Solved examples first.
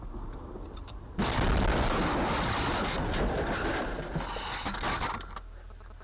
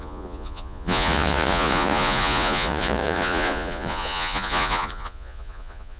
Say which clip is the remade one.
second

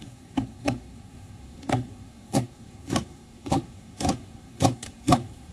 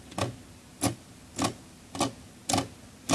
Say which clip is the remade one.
first